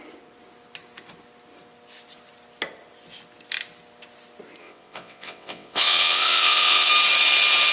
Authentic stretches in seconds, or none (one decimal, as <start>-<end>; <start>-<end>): 0.0-4.6; 6.9-7.7